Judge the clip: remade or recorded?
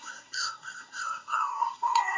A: remade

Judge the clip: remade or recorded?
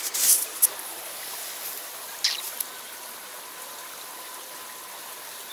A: recorded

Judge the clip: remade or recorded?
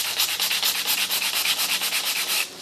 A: recorded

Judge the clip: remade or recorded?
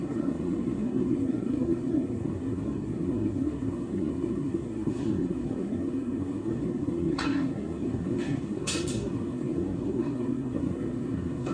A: remade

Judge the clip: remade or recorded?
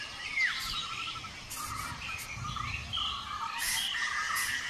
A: recorded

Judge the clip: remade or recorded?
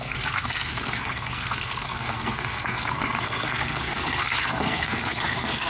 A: remade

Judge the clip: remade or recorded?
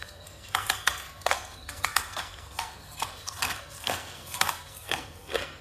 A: remade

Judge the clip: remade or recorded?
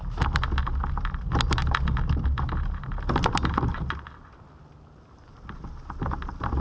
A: recorded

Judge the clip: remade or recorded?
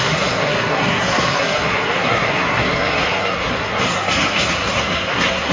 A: remade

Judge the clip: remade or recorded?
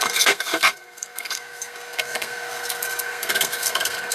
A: remade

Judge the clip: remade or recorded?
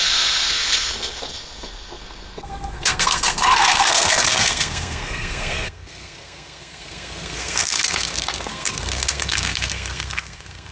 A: remade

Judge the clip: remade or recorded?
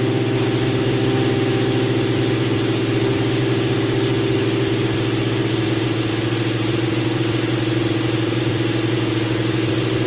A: recorded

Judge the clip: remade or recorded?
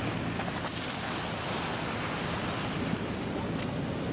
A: recorded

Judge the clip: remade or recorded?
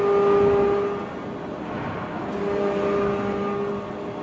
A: recorded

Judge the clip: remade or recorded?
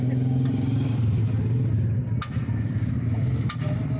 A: recorded